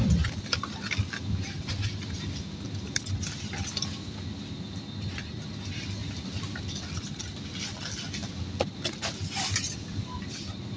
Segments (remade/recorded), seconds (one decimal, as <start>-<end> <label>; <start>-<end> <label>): 0.0-6.0 recorded; 6.0-7.2 remade; 7.2-10.8 recorded